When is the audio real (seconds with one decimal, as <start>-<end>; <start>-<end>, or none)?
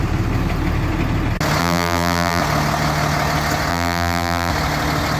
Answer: 0.0-1.6; 2.4-3.7; 4.5-5.2